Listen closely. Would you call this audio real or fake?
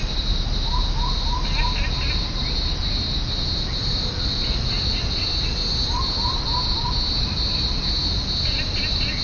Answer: real